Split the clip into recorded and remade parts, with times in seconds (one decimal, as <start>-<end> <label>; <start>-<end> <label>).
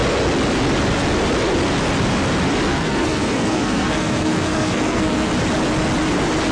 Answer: 0.0-2.7 recorded; 2.7-5.3 remade; 5.3-6.5 recorded